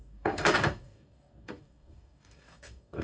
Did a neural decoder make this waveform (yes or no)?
yes